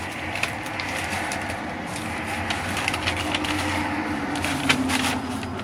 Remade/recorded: recorded